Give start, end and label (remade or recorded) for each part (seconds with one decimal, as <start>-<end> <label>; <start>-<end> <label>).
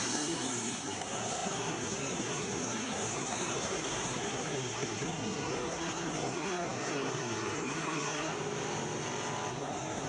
0.0-8.3 remade; 8.3-9.5 recorded; 9.5-10.1 remade